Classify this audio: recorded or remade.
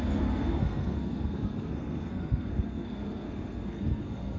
remade